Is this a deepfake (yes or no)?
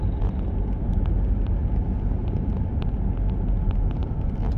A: no